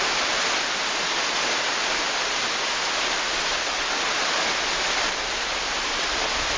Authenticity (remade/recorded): recorded